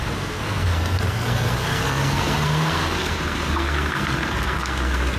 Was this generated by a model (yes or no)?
yes